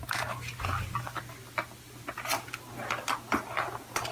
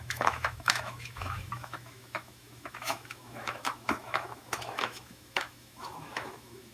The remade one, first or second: second